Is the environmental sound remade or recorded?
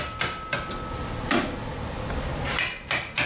recorded